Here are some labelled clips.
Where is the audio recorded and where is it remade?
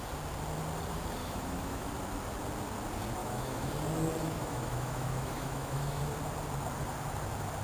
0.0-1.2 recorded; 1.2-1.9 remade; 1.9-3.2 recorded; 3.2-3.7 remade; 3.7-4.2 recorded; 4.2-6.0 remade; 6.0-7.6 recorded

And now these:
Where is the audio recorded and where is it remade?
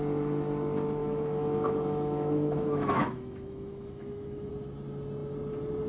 0.0-1.0 recorded; 1.0-4.5 remade; 4.5-5.9 recorded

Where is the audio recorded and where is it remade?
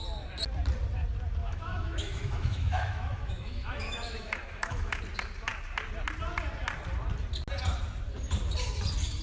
0.0-1.4 recorded; 1.4-5.0 remade; 5.0-9.2 recorded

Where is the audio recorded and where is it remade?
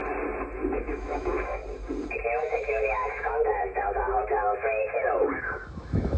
0.0-0.7 recorded; 0.7-1.6 remade; 1.6-2.4 recorded; 2.4-6.2 remade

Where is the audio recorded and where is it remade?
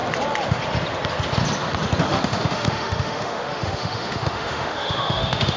0.0-2.1 recorded; 2.1-5.6 remade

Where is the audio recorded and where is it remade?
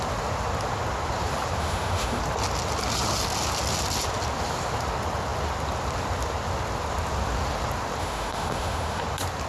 0.0-1.6 recorded; 1.6-2.2 remade; 2.2-8.0 recorded; 8.0-9.0 remade; 9.0-9.5 recorded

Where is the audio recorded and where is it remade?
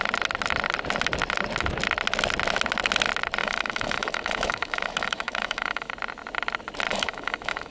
0.0-3.4 recorded; 3.4-5.9 remade; 5.9-6.9 recorded; 6.9-7.7 remade